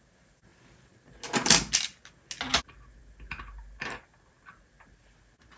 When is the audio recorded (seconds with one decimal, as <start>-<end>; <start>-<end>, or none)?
0.0-5.6